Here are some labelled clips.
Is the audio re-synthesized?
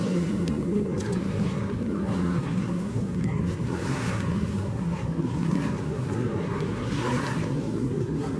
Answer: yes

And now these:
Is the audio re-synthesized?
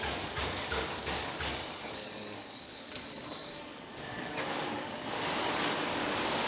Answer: yes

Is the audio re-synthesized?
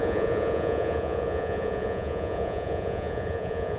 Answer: yes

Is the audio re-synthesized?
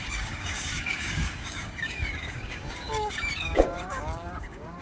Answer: yes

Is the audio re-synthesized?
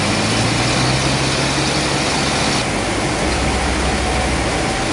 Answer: no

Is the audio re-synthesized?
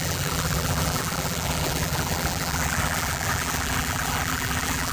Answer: yes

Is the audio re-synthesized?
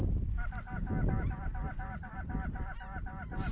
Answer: no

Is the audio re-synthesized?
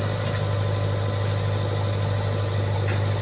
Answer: no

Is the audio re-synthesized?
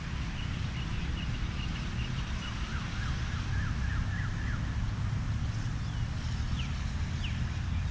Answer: no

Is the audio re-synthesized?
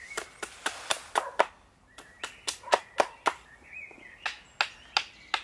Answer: no